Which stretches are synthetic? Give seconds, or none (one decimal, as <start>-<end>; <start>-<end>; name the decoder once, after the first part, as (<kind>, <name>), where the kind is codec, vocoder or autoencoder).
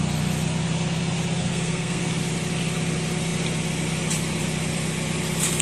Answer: 1.4-2.1 (codec, SNAC)